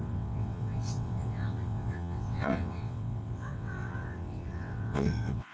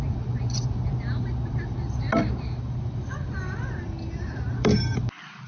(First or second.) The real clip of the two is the second